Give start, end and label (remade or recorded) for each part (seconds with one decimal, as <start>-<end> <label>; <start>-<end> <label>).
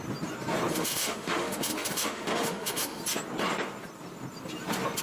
0.0-0.7 recorded; 0.7-3.0 remade; 3.0-5.0 recorded